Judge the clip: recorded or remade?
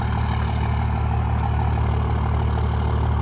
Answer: recorded